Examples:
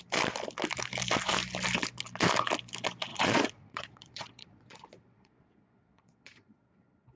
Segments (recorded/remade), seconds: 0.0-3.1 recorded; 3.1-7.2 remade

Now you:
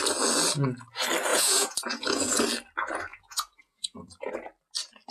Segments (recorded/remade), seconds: 0.0-1.3 recorded; 1.3-2.4 remade; 2.4-3.1 recorded; 3.1-4.3 remade; 4.3-5.1 recorded

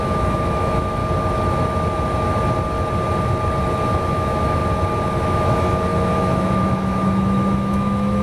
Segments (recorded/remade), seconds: 0.0-1.0 remade; 1.0-4.1 recorded; 4.1-4.6 remade; 4.6-5.2 recorded; 5.2-8.2 remade

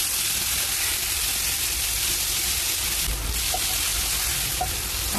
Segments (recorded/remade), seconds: 0.0-0.9 recorded; 0.9-2.1 remade; 2.1-5.2 recorded